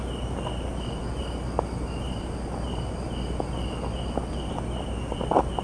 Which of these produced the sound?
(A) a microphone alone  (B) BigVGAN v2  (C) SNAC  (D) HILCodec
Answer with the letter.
A